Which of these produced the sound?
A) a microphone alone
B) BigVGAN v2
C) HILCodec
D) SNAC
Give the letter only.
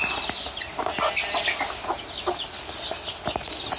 A